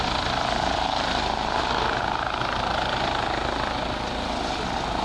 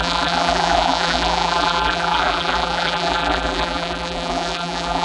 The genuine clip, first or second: first